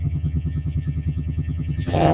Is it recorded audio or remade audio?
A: remade